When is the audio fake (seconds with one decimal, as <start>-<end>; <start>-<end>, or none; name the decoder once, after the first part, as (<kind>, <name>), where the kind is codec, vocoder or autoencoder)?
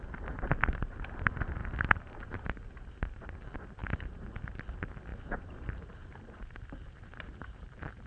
1.6-3.3 (vocoder, BigVGAN v2); 3.8-4.3; 5.1-8.1